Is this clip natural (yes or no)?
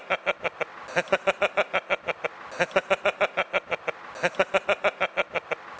yes